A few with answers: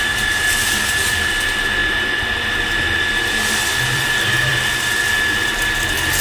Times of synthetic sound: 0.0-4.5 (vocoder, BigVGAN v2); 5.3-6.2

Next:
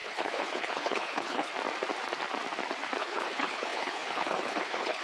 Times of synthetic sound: 0.0-1.5 (codec, HILCodec); 3.0-5.0

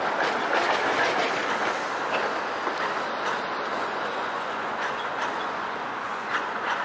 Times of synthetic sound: 3.7-6.8 (vocoder, Vocos)

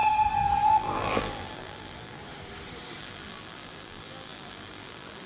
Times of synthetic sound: 0.7-2.2 (vocoder, BigVGAN v2); 3.0-5.3